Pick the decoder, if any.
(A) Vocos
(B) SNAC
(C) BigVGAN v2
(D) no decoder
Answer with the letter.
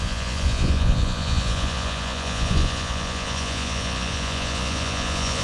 A